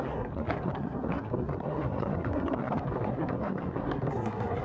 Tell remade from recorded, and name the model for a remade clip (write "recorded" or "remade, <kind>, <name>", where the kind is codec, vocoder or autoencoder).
remade, codec, SNAC